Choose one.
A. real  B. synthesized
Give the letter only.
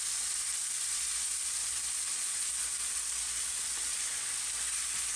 A